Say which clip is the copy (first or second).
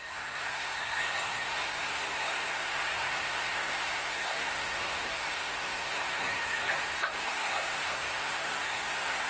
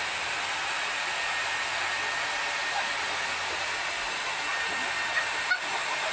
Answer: first